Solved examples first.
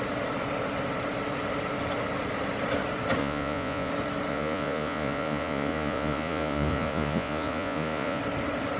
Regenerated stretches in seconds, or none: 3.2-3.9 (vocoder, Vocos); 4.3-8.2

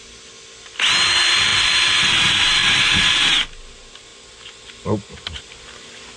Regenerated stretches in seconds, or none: none

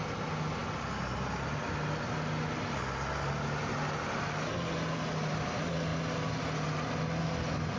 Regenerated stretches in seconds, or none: none